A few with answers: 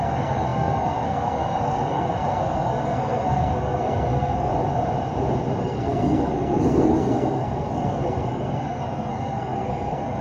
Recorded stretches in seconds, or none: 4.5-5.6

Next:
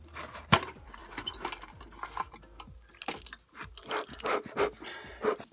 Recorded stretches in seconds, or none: 0.0-5.5